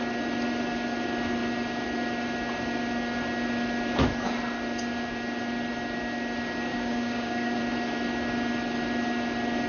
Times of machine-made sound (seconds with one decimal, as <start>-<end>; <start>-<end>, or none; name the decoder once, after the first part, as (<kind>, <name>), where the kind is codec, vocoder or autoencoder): 6.7-7.6 (codec, DAC)